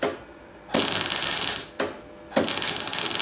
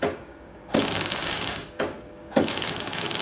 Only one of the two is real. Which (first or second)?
first